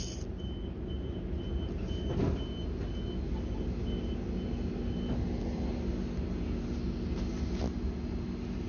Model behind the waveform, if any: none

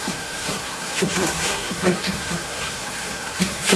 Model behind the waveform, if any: codec, SNAC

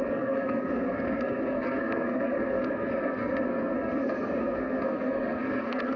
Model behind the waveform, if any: codec, SNAC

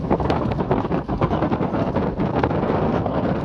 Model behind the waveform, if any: codec, SNAC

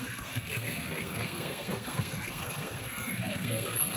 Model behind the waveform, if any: codec, SNAC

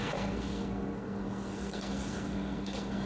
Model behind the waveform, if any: codec, SNAC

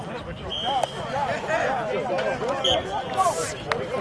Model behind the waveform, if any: none